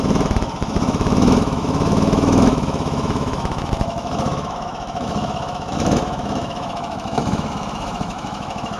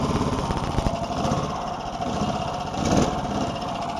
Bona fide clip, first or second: second